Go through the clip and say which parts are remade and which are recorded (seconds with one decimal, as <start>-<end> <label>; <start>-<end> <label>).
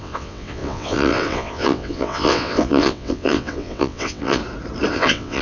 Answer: 0.0-4.4 remade; 4.4-4.9 recorded; 4.9-5.4 remade